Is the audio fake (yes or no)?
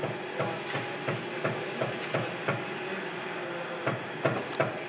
no